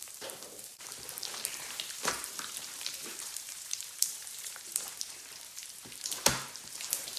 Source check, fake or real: fake